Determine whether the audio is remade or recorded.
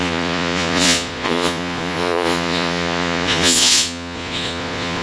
remade